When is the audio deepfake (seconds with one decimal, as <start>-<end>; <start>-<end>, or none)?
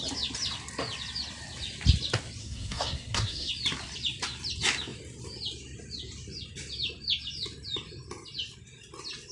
2.4-3.5